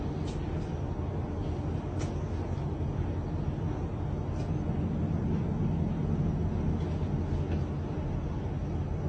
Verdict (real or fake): real